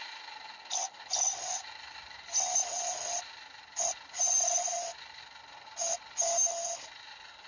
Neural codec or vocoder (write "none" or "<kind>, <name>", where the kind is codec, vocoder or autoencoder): none